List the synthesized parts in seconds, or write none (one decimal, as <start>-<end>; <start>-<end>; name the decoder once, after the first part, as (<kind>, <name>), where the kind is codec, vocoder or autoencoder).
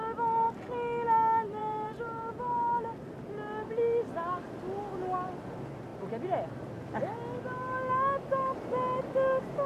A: 1.6-2.3 (vocoder, BigVGAN v2)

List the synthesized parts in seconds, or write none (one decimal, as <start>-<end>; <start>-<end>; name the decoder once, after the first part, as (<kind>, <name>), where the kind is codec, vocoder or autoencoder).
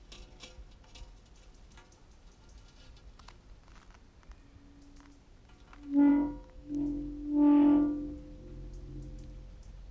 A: 6.1-6.7 (autoencoder, DAC-VAE)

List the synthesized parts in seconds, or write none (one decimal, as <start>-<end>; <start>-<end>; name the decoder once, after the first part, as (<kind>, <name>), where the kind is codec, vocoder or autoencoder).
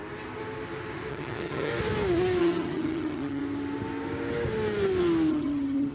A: 1.1-1.7 (vocoder, HiFi-GAN); 2.4-3.4; 5.3-5.9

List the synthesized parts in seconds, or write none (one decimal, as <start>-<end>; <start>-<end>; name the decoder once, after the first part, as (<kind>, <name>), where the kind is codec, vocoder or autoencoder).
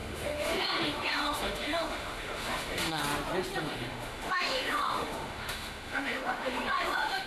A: 0.0-3.0 (autoencoder, DAC-VAE); 3.6-7.3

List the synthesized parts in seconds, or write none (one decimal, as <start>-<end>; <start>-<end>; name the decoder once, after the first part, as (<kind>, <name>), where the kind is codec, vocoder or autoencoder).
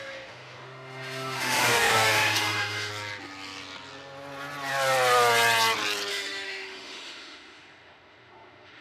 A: 0.0-2.9 (autoencoder, DAC-VAE); 6.1-8.8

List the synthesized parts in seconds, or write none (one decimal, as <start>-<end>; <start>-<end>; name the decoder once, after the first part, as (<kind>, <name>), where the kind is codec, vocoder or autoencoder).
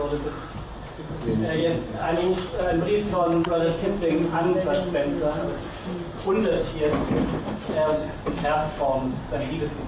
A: none